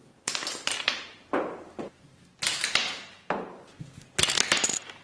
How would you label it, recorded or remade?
remade